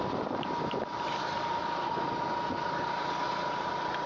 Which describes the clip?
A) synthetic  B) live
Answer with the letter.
B